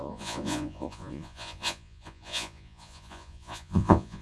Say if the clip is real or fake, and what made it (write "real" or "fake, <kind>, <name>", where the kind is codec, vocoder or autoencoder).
fake, vocoder, Vocos